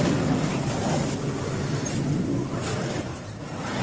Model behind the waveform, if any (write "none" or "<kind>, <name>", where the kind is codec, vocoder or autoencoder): none